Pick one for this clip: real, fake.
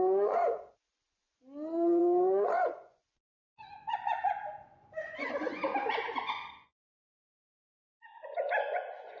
fake